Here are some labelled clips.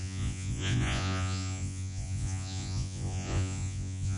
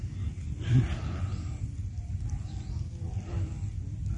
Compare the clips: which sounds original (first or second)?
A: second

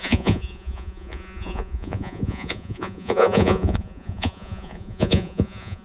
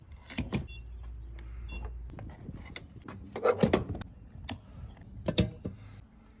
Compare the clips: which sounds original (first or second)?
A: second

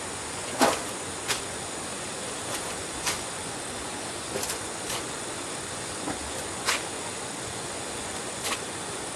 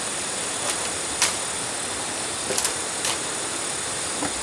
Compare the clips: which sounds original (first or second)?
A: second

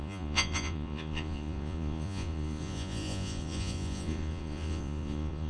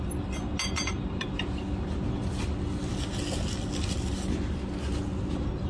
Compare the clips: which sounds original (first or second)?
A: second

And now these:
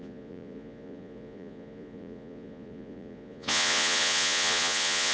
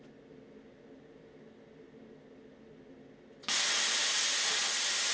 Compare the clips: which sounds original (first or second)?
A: second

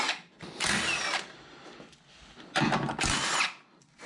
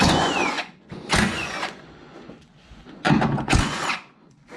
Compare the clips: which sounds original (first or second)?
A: first